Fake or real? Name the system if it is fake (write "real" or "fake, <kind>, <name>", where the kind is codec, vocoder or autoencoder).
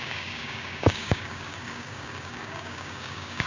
fake, codec, DAC